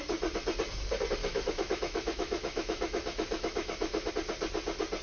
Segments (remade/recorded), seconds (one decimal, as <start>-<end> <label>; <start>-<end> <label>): 0.0-1.2 recorded; 1.2-4.1 remade; 4.1-5.0 recorded